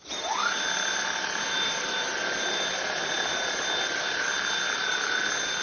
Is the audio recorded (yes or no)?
yes